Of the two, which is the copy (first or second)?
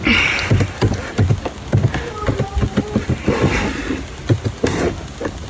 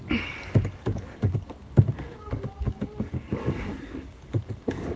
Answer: second